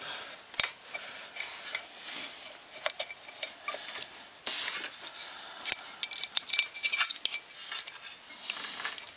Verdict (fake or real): real